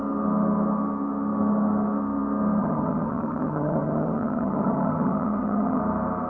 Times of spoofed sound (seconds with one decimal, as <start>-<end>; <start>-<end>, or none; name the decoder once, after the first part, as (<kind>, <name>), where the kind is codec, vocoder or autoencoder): 2.6-5.8 (vocoder, HiFi-GAN)